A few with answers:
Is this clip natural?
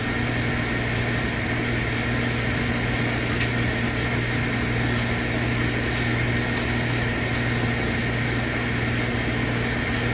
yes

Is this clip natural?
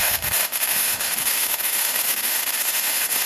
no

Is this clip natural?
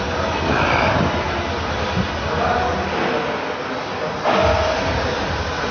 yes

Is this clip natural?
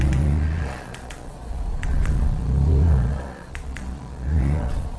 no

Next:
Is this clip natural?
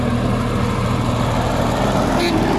no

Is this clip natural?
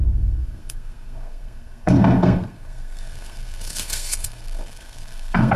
no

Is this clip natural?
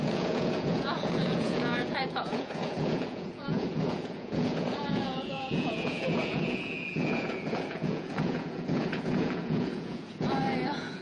no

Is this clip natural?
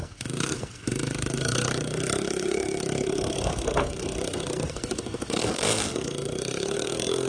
no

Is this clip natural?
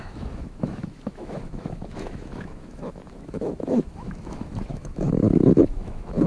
no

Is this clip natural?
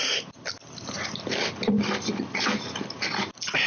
yes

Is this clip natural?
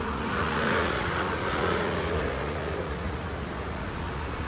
no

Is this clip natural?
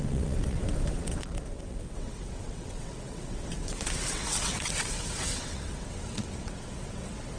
no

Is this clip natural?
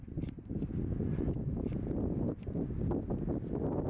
yes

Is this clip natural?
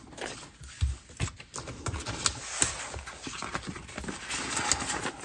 yes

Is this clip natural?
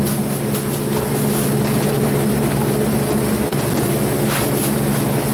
yes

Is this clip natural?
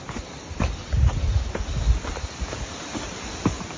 yes